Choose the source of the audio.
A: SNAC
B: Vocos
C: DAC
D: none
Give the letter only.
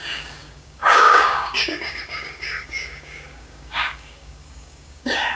C